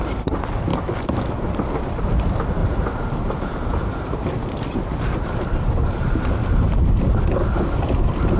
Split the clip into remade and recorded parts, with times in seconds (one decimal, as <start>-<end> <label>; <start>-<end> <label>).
0.0-2.6 recorded; 2.6-7.2 remade; 7.2-8.4 recorded